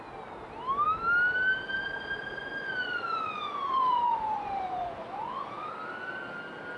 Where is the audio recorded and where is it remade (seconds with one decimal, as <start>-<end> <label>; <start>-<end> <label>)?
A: 0.0-2.6 recorded; 2.6-5.7 remade; 5.7-6.8 recorded